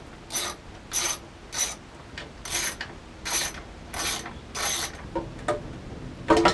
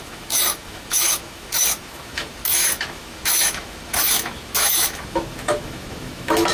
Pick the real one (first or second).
first